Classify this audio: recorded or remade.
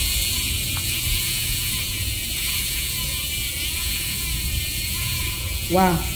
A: remade